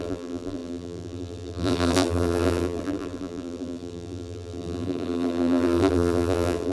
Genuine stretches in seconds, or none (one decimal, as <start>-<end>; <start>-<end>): none

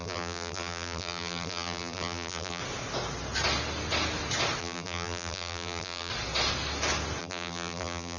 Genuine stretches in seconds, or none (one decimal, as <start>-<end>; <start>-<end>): 2.6-4.6; 6.1-7.2

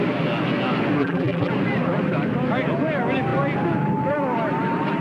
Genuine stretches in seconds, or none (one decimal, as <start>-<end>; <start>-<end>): 0.0-1.0; 1.5-5.0

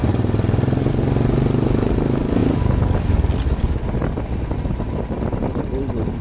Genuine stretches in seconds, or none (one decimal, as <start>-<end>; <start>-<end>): 0.9-6.2

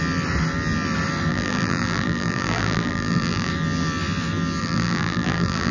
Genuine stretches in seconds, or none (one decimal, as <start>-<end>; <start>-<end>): 0.0-1.3; 3.5-4.6

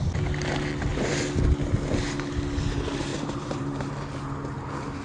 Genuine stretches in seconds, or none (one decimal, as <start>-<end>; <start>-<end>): 0.0-3.1; 3.9-5.0